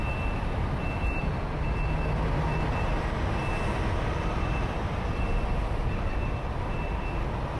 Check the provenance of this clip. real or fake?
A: real